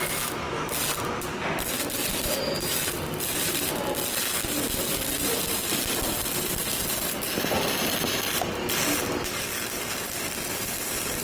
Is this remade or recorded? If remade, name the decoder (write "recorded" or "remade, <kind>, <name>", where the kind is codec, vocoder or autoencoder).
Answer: recorded